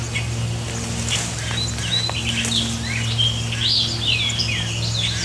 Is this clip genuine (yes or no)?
yes